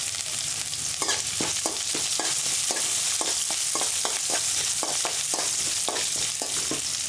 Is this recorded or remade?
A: recorded